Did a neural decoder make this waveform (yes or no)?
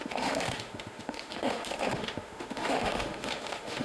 yes